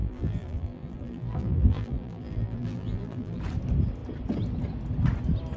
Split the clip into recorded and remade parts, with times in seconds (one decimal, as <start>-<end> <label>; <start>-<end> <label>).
0.0-3.4 remade; 3.4-5.6 recorded